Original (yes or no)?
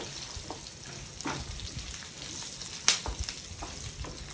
yes